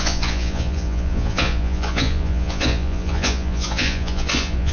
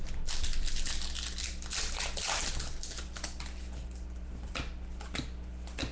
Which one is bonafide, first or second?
second